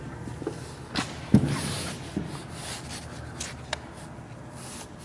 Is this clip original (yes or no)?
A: yes